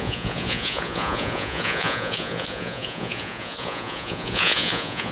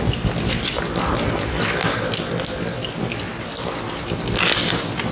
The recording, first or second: second